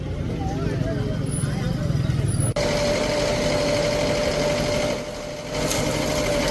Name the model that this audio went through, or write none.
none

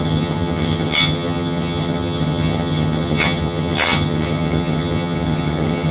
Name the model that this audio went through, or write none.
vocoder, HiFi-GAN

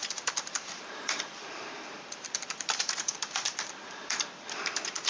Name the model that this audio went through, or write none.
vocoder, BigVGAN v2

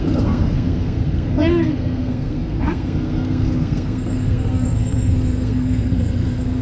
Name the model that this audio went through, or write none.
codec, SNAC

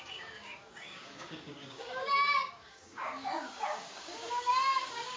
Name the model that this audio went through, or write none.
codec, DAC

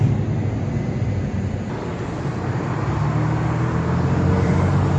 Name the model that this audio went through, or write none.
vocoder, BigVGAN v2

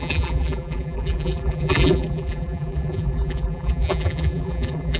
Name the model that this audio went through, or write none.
vocoder, BigVGAN v2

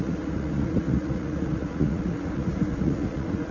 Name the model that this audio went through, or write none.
vocoder, Vocos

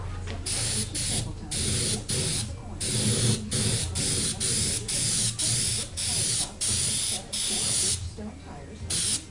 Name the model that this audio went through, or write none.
none